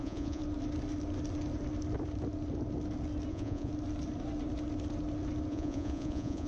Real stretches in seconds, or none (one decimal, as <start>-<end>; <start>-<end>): 0.4-3.3; 3.7-5.5